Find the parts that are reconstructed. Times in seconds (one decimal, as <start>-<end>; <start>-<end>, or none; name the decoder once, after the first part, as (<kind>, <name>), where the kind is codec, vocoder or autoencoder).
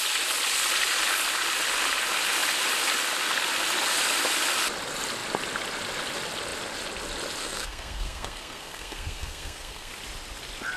7.4-9.9 (codec, SNAC)